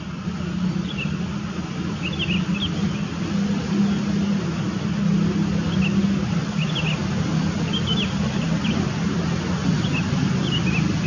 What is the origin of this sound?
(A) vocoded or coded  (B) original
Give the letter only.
B